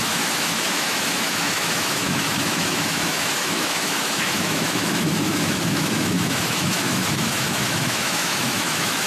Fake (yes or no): yes